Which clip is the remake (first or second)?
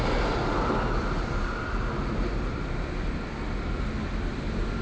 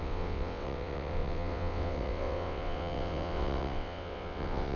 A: second